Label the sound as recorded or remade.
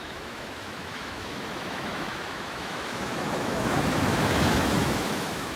remade